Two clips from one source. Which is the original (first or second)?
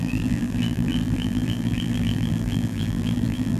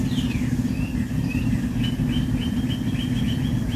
second